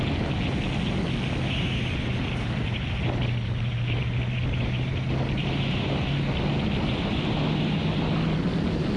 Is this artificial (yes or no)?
no